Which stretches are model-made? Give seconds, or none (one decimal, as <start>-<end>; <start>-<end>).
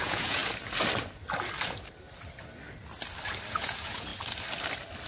0.0-0.4; 3.5-4.1